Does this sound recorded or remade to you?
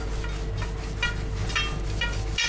recorded